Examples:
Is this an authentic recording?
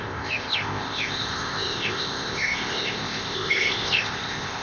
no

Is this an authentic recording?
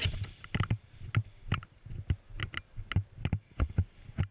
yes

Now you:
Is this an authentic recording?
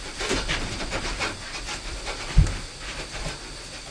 no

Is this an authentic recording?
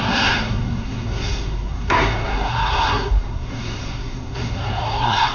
no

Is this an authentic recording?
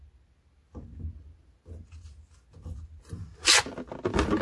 yes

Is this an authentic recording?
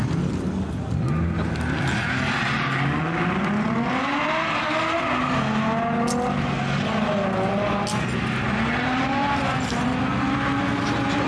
yes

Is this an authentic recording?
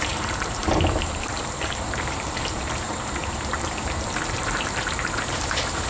no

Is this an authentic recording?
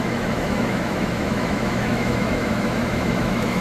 no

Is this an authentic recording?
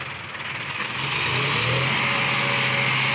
yes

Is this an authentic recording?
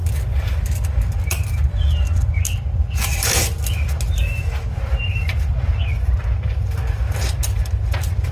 yes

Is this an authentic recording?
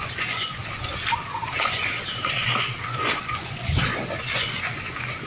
no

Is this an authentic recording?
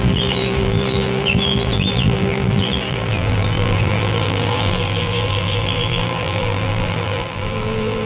no